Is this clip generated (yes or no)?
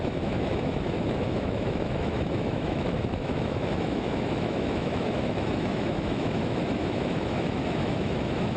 yes